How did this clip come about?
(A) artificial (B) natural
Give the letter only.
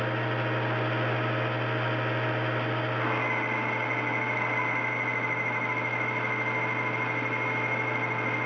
B